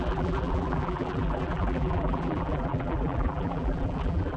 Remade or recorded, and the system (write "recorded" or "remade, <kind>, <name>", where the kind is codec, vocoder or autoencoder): remade, vocoder, BigVGAN v2